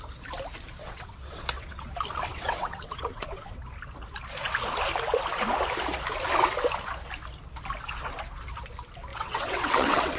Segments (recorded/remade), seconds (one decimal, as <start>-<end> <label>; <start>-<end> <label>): 0.0-0.8 recorded; 0.8-1.9 remade; 1.9-2.3 recorded; 2.3-3.6 remade; 3.6-9.1 recorded; 9.1-10.2 remade